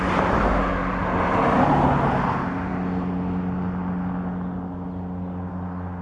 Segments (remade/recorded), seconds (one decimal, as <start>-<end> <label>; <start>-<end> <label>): 0.0-6.0 recorded